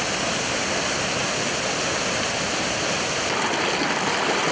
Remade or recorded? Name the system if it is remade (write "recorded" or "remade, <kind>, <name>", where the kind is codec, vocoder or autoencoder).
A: recorded